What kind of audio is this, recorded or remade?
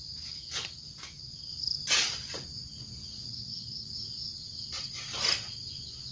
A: recorded